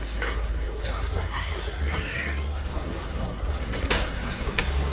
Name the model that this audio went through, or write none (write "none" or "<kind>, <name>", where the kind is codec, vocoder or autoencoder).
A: codec, SNAC